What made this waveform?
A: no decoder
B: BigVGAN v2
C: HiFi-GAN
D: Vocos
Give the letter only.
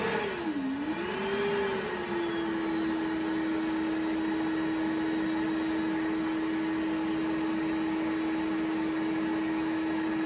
A